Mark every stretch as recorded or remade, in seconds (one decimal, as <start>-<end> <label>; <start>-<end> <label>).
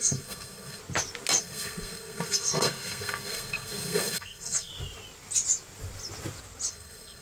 0.0-0.8 remade; 0.8-1.4 recorded; 1.4-4.7 remade; 4.7-6.7 recorded; 6.7-7.2 remade